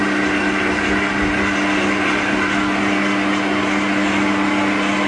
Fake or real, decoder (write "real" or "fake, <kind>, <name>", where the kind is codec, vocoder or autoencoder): real